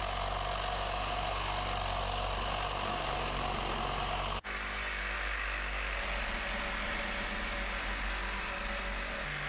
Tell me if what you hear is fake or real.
real